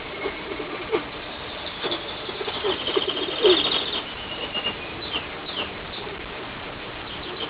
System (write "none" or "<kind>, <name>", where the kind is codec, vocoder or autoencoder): vocoder, BigVGAN v2